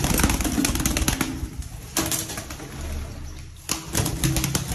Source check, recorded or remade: recorded